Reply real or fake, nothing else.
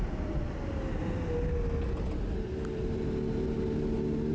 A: real